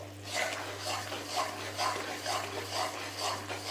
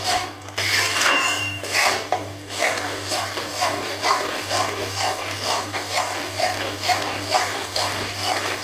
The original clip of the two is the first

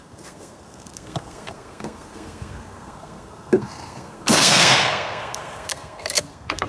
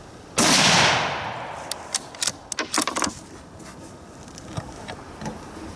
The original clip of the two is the second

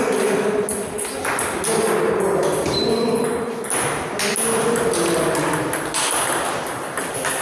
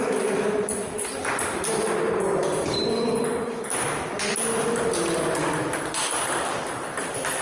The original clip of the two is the first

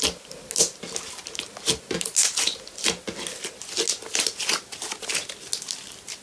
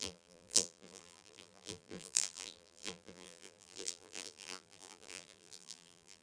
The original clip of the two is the first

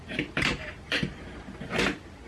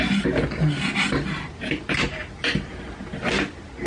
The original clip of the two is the second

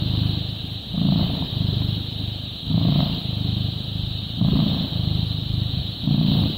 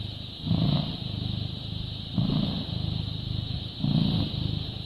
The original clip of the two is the first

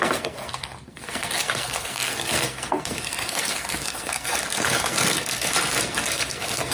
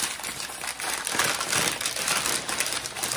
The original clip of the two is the second